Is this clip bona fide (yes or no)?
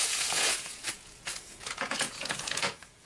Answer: no